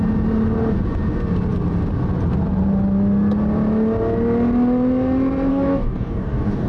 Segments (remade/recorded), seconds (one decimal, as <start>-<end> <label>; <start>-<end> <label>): 0.0-5.5 recorded; 5.5-6.7 remade

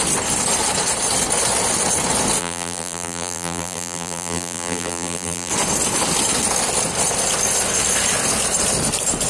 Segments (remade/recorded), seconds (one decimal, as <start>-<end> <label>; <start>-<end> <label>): 0.0-2.4 recorded; 2.4-5.5 remade; 5.5-9.3 recorded

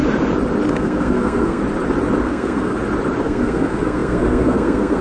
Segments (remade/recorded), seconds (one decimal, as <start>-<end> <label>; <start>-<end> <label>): 0.0-0.7 recorded; 0.7-1.6 remade; 1.6-2.2 recorded; 2.2-2.7 remade; 2.7-3.2 recorded; 3.2-5.0 remade

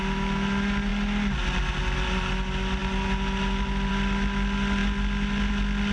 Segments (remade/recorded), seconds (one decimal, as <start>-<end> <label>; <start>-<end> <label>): 0.0-5.9 recorded

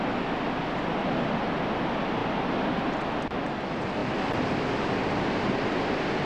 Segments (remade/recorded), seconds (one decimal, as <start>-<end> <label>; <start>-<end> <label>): 0.0-4.0 recorded; 4.0-4.5 remade; 4.5-6.3 recorded